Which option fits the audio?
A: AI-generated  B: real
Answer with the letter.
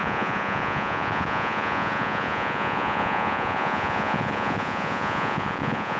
A